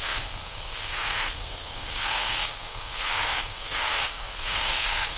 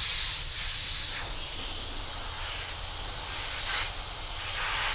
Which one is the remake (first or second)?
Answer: first